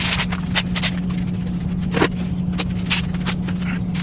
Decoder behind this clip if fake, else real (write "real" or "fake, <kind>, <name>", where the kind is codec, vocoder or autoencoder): real